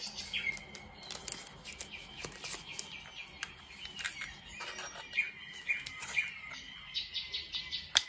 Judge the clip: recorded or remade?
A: recorded